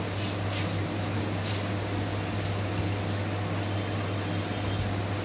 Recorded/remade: recorded